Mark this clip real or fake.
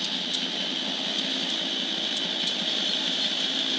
real